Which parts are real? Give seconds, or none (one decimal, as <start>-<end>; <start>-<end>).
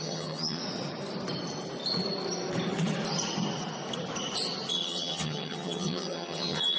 0.6-4.7